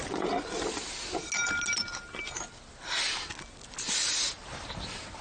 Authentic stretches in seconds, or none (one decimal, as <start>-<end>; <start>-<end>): 0.0-5.2